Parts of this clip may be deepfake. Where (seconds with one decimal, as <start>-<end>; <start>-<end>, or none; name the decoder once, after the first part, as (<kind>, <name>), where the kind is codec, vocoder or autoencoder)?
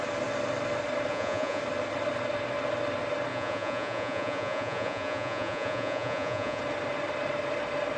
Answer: 1.1-1.6 (vocoder, Vocos); 3.3-6.6